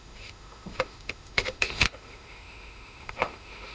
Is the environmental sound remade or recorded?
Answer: remade